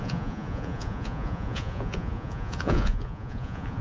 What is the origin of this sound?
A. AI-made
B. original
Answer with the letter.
A